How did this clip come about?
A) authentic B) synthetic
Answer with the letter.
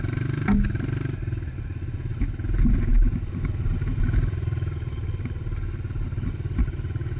A